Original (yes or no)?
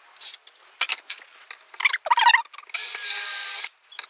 yes